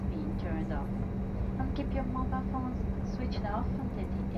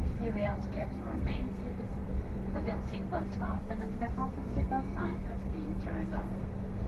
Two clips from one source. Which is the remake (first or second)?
second